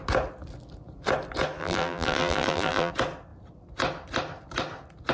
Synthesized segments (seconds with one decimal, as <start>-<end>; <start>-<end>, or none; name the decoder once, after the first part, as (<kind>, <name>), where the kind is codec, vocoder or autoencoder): 1.6-2.9 (vocoder, BigVGAN v2)